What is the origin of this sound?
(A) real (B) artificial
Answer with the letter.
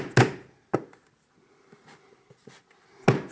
A